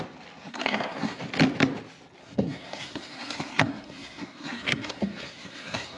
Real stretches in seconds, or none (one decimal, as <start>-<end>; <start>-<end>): 0.0-0.5; 1.2-2.2

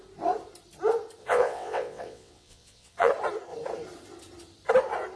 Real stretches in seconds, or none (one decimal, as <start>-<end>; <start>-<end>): 0.0-1.2; 3.1-5.2

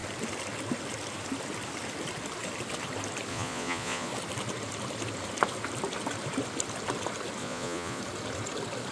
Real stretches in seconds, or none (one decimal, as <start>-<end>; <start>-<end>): 0.0-3.3; 4.1-7.4; 8.0-8.9